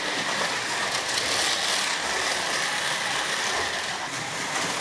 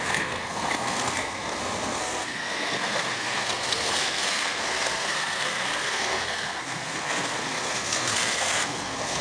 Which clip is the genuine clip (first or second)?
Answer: first